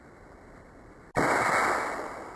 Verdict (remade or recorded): recorded